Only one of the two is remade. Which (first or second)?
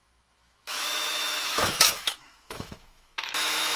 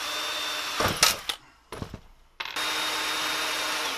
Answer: first